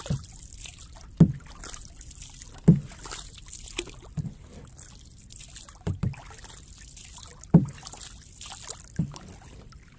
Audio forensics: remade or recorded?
recorded